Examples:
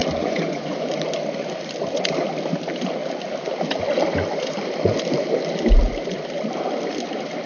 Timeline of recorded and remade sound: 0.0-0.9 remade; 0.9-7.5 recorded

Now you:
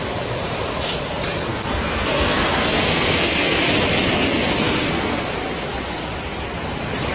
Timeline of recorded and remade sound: 0.0-1.5 recorded; 1.5-3.6 remade; 3.6-4.1 recorded; 4.1-5.3 remade; 5.3-7.1 recorded

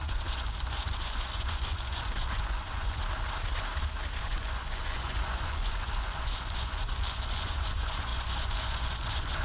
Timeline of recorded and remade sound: 0.0-3.0 remade; 3.0-4.2 recorded; 4.2-9.4 remade

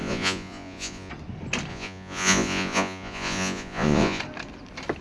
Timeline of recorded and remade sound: 0.0-1.1 remade; 1.1-1.7 recorded; 1.7-4.2 remade; 4.2-5.0 recorded

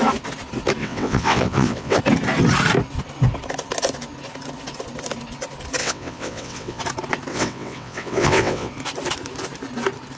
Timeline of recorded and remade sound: 0.0-0.8 recorded; 0.8-2.0 remade; 2.0-5.8 recorded; 5.8-6.8 remade; 6.8-7.3 recorded; 7.3-8.7 remade; 8.7-10.2 recorded

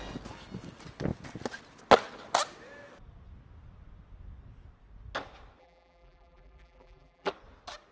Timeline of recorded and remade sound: 0.0-5.6 recorded; 5.6-7.3 remade; 7.3-7.9 recorded